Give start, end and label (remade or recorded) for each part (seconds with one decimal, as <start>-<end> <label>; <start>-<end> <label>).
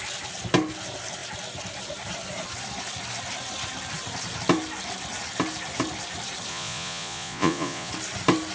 0.0-6.5 recorded; 6.5-7.9 remade; 7.9-8.5 recorded